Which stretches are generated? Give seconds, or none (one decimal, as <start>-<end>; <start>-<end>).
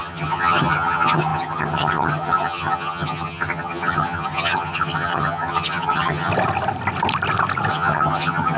0.0-6.3; 7.7-8.6